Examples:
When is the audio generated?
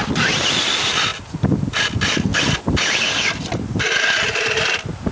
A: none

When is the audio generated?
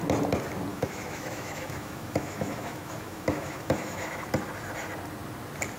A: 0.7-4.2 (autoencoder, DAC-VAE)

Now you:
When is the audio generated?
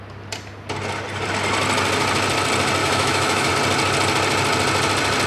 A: 2.8-3.5 (autoencoder, DAC-VAE)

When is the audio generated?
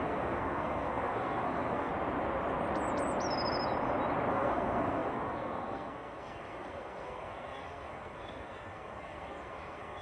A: 0.0-1.9 (codec, SNAC); 4.3-10.0